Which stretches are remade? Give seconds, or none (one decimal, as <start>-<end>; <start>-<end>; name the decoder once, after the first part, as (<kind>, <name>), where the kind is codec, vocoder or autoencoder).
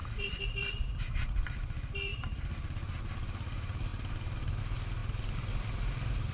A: 0.0-0.7 (vocoder, BigVGAN v2); 3.9-4.6